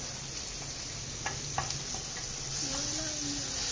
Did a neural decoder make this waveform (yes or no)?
no